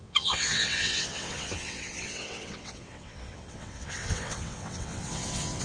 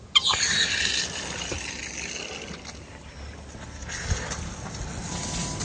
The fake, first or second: first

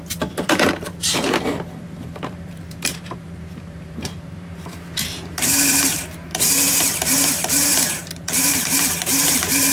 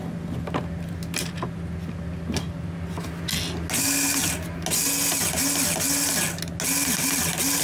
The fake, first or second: first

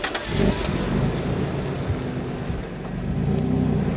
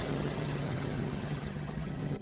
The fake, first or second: second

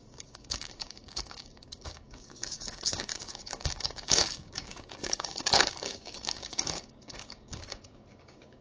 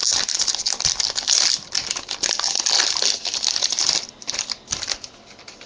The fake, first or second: first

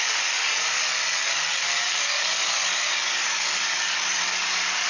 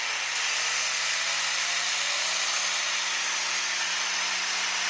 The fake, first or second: first